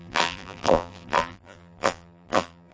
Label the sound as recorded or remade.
remade